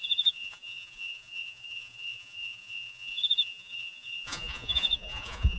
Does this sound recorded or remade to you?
remade